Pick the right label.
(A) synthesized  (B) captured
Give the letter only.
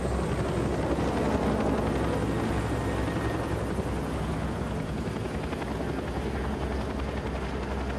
B